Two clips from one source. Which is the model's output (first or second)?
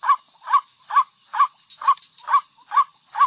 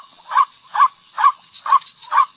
second